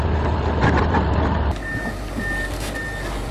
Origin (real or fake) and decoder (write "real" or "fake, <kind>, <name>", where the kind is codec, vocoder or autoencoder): real